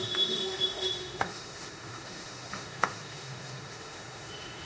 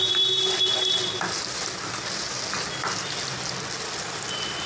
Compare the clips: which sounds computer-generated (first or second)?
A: first